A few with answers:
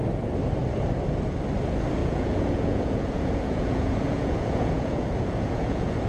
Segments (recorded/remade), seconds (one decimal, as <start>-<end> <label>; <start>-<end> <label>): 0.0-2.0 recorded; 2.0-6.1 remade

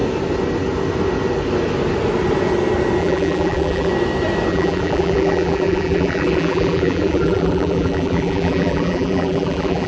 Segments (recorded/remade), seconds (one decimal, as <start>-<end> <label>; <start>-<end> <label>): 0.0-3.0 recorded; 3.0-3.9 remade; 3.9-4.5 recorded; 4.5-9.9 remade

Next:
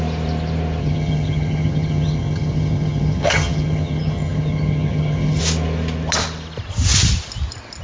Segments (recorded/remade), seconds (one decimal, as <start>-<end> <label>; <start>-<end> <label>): 0.0-0.8 recorded; 0.8-5.4 remade; 5.4-7.8 recorded